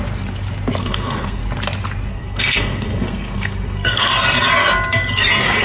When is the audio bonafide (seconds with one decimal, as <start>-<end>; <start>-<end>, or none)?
0.0-0.8; 1.4-2.1; 4.1-5.6